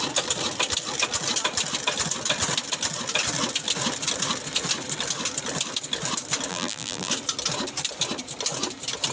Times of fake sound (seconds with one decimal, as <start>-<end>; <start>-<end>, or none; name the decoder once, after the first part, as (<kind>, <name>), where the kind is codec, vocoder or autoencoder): 6.5-7.1 (vocoder, BigVGAN v2)